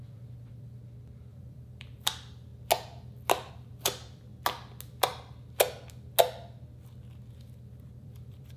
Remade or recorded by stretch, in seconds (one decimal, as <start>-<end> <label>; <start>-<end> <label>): 0.0-0.8 remade; 0.8-1.3 recorded; 1.3-2.5 remade; 2.5-3.5 recorded; 3.5-4.3 remade; 4.3-7.3 recorded; 7.3-8.6 remade